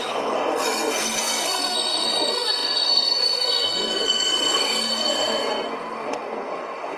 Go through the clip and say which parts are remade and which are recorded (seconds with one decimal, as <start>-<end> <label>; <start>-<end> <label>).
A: 0.0-7.0 remade